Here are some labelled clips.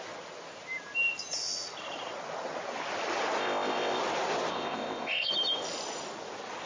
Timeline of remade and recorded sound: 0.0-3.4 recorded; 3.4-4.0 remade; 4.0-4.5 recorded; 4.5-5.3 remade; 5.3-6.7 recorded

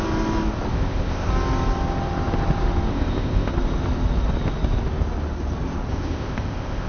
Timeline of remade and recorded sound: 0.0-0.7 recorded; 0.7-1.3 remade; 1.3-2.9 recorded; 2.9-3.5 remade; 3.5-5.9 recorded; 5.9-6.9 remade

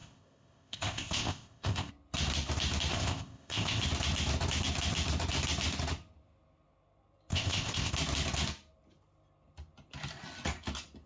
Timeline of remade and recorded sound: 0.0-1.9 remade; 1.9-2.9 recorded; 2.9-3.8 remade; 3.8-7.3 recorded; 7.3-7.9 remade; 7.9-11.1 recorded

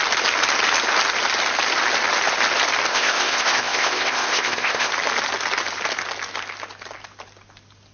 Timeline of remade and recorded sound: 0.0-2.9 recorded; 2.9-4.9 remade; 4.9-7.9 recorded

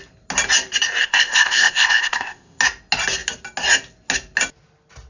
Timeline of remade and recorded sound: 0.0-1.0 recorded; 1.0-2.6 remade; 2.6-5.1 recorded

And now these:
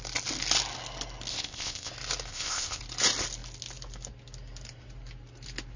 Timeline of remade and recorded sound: 0.0-1.3 recorded; 1.3-1.9 remade; 1.9-2.3 recorded; 2.3-2.8 remade; 2.8-5.8 recorded